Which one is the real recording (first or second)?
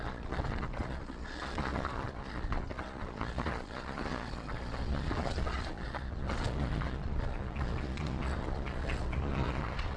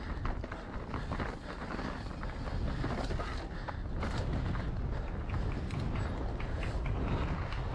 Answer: second